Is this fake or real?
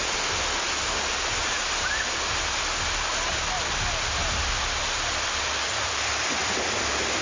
real